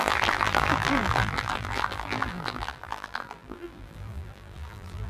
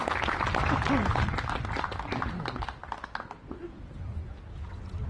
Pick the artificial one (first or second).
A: first